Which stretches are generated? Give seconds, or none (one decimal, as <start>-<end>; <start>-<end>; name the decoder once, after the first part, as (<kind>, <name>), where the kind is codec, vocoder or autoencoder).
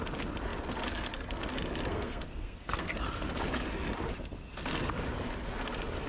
1.9-2.9 (codec, SNAC)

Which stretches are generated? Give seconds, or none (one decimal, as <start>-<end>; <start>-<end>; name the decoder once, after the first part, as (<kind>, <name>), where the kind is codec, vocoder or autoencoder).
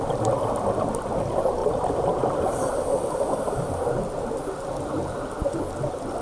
none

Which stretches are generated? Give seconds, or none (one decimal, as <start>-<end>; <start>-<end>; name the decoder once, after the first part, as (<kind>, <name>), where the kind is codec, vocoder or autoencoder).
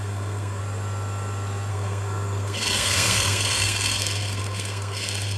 0.0-0.6 (codec, SNAC); 1.7-5.4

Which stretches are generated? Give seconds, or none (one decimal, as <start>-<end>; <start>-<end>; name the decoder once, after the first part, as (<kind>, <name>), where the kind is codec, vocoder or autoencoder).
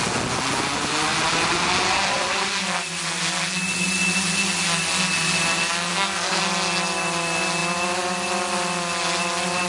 5.9-6.4 (codec, SNAC)